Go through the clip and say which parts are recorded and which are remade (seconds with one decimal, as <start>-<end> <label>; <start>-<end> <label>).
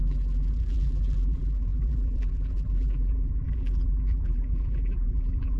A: 0.0-5.6 remade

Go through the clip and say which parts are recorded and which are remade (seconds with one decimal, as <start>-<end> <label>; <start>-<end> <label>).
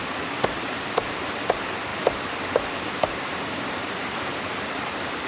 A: 0.0-5.3 recorded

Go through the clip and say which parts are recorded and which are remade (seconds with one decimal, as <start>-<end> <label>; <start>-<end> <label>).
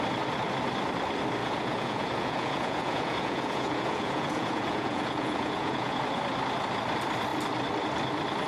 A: 0.0-1.4 recorded; 1.4-6.0 remade; 6.0-8.5 recorded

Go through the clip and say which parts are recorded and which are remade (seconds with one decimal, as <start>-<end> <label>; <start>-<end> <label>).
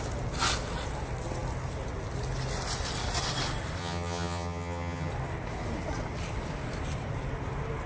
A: 0.0-3.8 recorded; 3.8-5.1 remade; 5.1-7.9 recorded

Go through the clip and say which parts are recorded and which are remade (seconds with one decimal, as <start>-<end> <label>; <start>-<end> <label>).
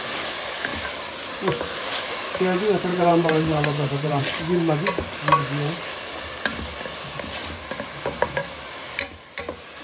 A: 0.0-2.9 recorded; 2.9-4.2 remade; 4.2-9.8 recorded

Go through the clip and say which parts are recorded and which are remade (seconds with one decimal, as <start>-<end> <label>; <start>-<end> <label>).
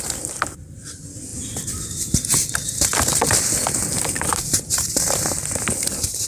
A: 0.0-4.3 recorded; 4.3-5.4 remade; 5.4-6.3 recorded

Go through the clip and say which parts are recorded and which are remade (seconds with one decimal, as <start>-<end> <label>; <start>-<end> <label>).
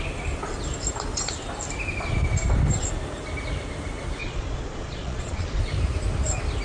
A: 0.0-4.2 recorded; 4.2-5.6 remade; 5.6-6.6 recorded